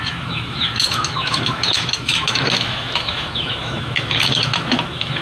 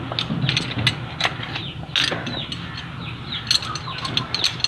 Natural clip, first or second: second